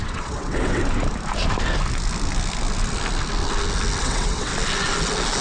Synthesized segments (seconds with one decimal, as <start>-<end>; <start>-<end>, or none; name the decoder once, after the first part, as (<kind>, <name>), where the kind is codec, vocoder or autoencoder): 0.0-0.8 (vocoder, WaveNeXt); 4.0-4.5